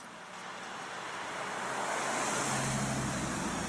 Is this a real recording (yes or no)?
yes